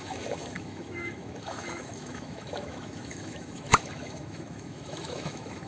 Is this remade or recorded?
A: remade